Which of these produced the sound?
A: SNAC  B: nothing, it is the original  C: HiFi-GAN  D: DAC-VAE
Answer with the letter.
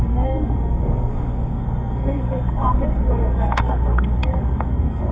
A